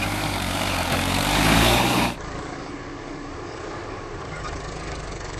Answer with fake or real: fake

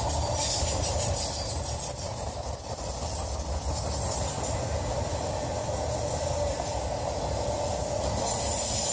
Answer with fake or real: real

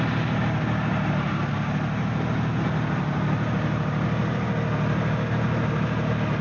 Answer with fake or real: real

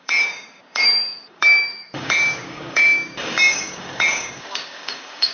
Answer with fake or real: fake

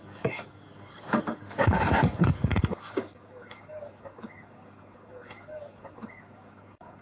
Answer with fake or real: fake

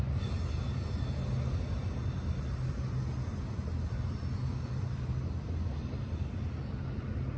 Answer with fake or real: real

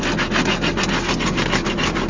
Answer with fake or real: real